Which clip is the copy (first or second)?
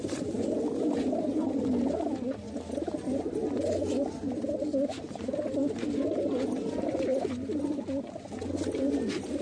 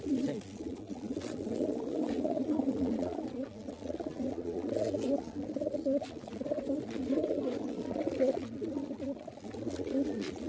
second